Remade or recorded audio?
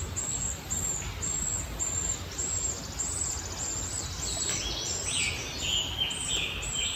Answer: recorded